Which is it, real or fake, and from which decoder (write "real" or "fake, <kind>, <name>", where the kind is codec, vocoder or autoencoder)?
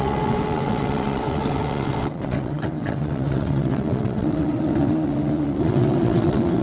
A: fake, vocoder, WaveNeXt